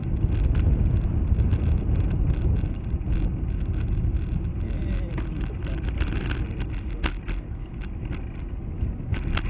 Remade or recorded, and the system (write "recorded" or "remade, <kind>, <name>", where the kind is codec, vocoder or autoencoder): recorded